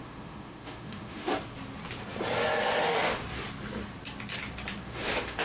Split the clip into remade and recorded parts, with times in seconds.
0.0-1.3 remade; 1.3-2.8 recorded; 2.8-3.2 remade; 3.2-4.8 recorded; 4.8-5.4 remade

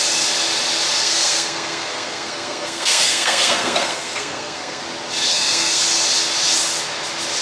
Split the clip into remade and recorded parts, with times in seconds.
0.0-1.0 recorded; 1.0-4.8 remade; 4.8-5.3 recorded; 5.3-5.8 remade; 5.8-7.4 recorded

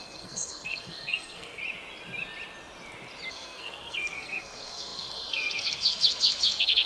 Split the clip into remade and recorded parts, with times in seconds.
0.0-1.6 remade; 1.6-3.3 recorded; 3.3-6.9 remade

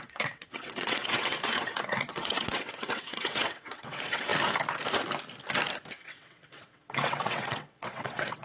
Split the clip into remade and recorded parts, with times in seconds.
0.0-4.3 remade; 4.3-5.9 recorded; 5.9-8.4 remade

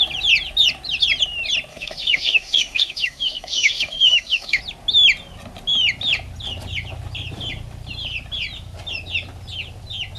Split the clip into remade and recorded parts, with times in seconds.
0.0-1.7 recorded; 1.7-4.6 remade; 4.6-10.2 recorded

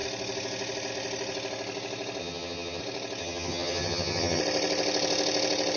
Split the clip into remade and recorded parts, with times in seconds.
0.0-2.2 recorded; 2.2-2.8 remade; 2.8-3.2 recorded; 3.2-4.4 remade; 4.4-5.8 recorded

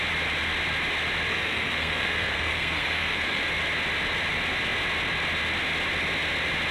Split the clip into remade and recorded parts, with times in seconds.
0.0-1.3 recorded; 1.3-3.4 remade; 3.4-6.7 recorded

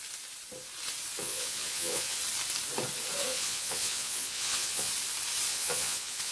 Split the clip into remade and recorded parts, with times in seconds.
0.0-1.2 recorded; 1.2-2.2 remade; 2.2-3.3 recorded; 3.3-4.9 remade; 4.9-5.5 recorded; 5.5-6.3 remade